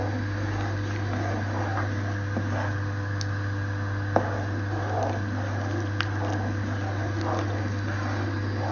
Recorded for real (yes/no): yes